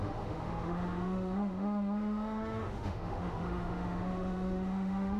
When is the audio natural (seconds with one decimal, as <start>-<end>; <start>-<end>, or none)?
none